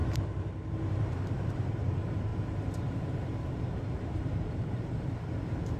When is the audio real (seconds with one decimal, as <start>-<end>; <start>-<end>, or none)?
0.0-0.7